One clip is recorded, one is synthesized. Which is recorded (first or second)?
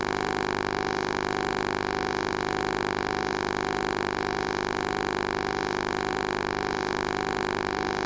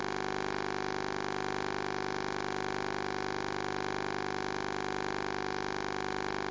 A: second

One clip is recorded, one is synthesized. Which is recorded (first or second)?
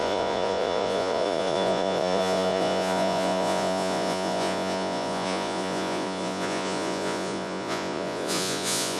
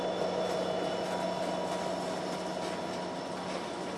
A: second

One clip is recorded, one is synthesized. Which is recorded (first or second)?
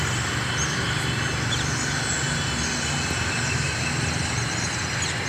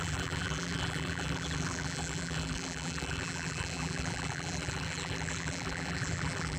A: first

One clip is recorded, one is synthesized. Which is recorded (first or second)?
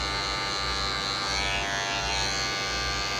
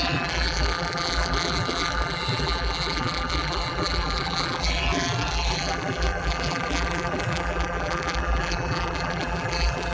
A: first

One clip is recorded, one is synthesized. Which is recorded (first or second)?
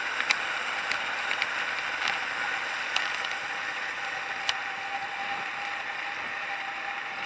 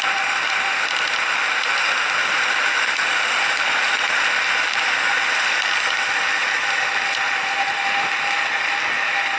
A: second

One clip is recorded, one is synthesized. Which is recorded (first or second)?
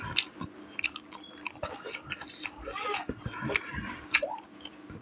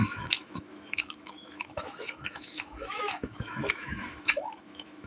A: first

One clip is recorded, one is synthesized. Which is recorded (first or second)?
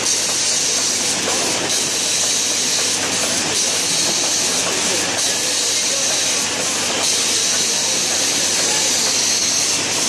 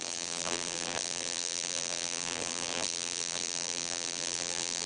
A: first